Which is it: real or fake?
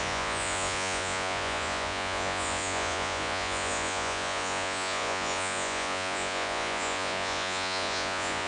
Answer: fake